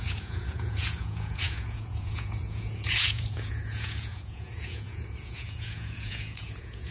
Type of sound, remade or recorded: remade